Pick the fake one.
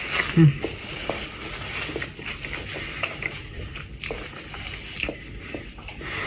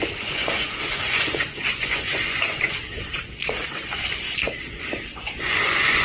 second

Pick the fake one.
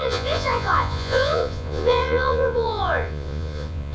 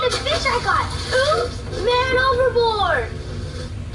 first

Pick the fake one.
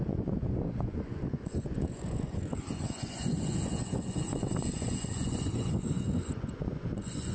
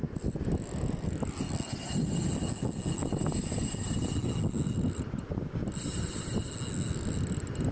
first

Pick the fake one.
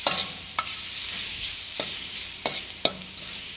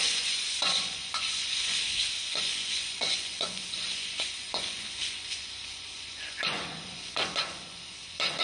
second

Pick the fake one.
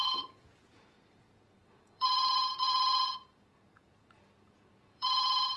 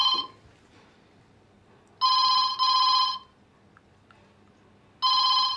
first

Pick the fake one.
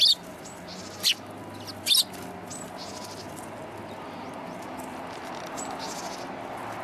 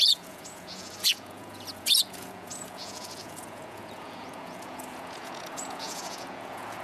second